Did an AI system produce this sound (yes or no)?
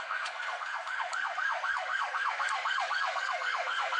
yes